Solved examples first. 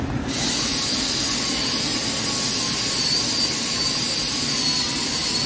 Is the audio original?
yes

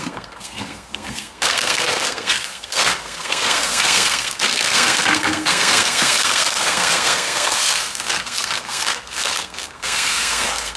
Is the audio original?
no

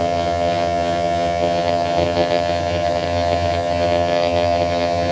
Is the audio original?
no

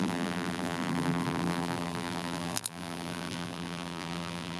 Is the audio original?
no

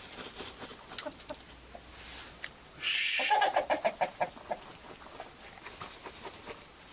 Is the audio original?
yes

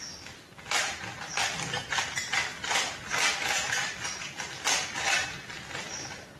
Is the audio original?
yes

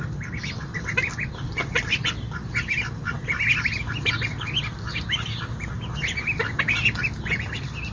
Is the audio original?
yes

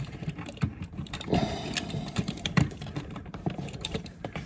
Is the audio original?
no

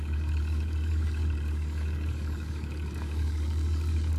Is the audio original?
no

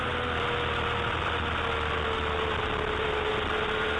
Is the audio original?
yes